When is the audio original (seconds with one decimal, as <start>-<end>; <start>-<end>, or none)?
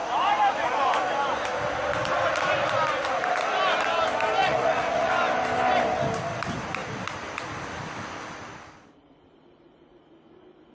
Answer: 0.0-4.4; 5.1-10.7